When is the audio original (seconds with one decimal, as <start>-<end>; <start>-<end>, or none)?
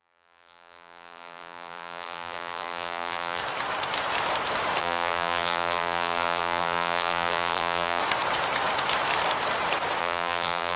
3.4-4.8; 8.0-10.0